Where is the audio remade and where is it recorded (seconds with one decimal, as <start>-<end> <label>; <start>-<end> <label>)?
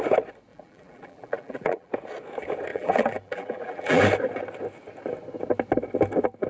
0.0-0.5 recorded; 0.5-1.9 remade; 1.9-2.7 recorded; 2.7-4.0 remade; 4.0-6.5 recorded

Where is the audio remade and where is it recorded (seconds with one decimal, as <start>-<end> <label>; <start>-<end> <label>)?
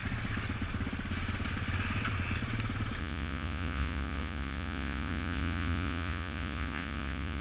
0.0-3.0 recorded; 3.0-7.4 remade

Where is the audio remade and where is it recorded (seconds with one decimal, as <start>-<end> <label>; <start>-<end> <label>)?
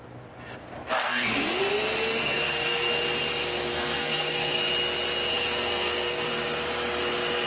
0.0-1.0 recorded; 1.0-1.6 remade; 1.6-2.1 recorded; 2.1-2.9 remade; 2.9-3.7 recorded; 3.7-4.7 remade; 4.7-5.3 recorded; 5.3-6.3 remade; 6.3-7.5 recorded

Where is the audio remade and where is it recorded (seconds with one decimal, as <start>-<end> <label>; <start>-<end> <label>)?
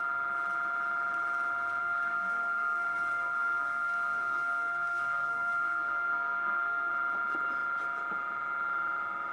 0.0-1.8 recorded; 1.8-6.9 remade; 6.9-9.3 recorded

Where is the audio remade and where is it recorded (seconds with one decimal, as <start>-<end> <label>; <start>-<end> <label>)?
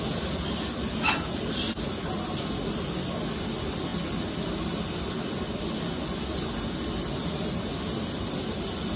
0.0-9.0 recorded